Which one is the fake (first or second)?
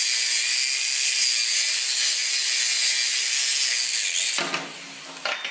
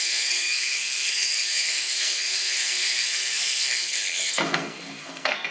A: second